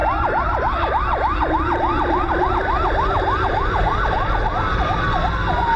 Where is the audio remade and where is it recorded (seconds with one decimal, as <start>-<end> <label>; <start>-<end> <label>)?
0.0-5.8 recorded